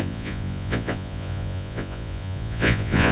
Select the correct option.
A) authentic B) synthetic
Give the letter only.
B